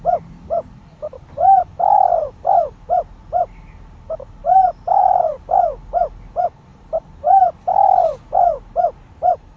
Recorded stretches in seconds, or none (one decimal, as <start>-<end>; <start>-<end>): 0.0-4.4; 5.4-9.6